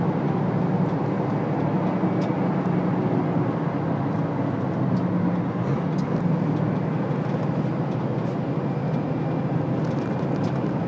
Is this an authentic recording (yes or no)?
yes